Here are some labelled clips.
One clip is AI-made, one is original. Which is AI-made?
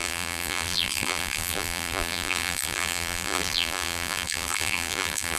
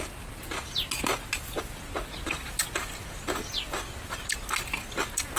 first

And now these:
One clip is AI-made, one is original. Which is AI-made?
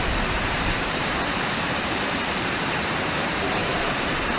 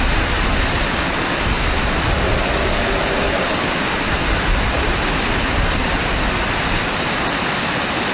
first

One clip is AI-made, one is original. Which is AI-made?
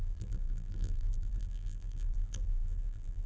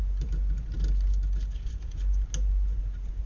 first